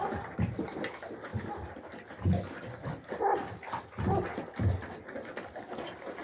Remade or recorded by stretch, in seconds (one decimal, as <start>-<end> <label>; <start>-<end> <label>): 0.0-6.2 recorded